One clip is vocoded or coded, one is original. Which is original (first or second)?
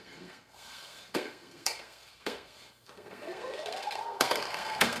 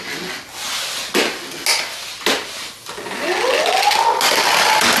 second